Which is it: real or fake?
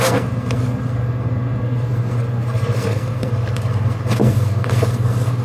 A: fake